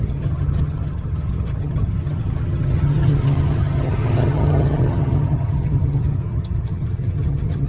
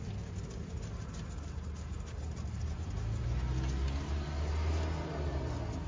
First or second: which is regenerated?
first